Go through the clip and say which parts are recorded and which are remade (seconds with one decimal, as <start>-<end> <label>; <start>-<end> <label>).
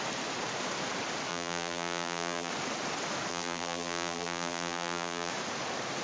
0.0-1.3 recorded; 1.3-2.5 remade; 2.5-3.3 recorded; 3.3-5.3 remade; 5.3-6.0 recorded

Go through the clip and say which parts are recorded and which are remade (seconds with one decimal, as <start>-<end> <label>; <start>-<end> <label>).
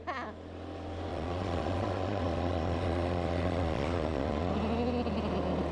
0.0-1.1 recorded; 1.1-4.5 remade; 4.5-5.7 recorded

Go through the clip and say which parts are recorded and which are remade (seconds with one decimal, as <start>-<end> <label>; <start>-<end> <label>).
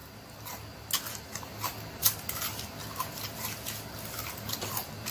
0.0-5.1 recorded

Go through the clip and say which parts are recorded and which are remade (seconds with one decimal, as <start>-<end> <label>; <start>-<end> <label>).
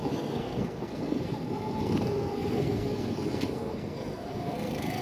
0.0-5.0 remade